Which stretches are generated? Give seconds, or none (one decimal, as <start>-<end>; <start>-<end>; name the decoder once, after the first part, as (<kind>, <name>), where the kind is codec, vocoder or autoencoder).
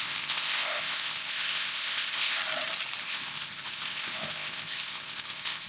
0.0-2.4 (codec, ZipCodec); 3.0-5.7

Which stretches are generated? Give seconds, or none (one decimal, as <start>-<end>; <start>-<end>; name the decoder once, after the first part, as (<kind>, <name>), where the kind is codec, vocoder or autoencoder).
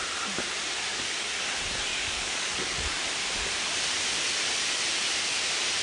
0.9-1.4 (codec, DAC); 1.9-3.0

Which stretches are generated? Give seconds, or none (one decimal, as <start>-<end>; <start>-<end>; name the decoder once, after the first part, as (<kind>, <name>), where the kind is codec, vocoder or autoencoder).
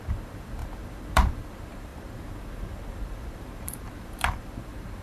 0.0-5.0 (vocoder, BigVGAN v2)